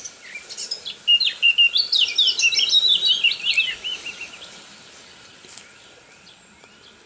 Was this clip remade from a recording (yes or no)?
no